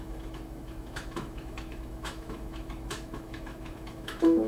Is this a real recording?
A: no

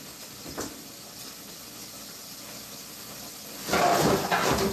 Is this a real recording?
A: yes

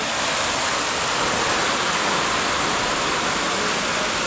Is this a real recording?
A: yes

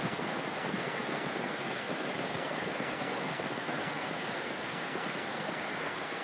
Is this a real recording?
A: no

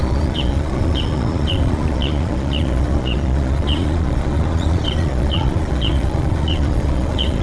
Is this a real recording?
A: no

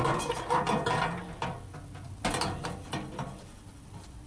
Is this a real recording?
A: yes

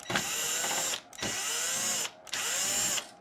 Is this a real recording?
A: yes